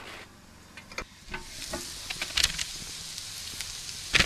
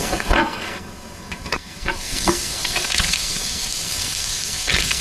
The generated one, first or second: second